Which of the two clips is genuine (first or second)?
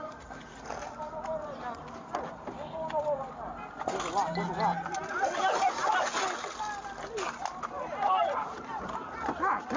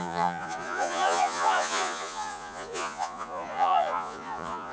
first